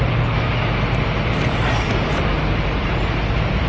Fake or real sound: real